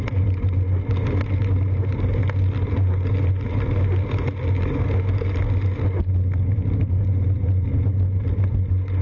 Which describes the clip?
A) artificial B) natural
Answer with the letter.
B